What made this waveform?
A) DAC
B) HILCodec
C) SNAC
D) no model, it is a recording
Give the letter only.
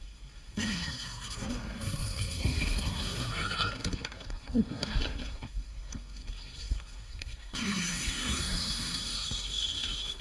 C